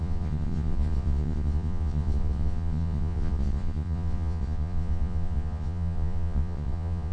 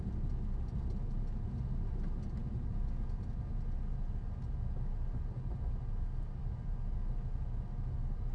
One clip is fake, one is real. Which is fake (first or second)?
first